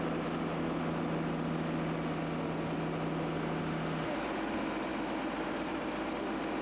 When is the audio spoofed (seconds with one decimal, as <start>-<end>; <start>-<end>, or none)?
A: none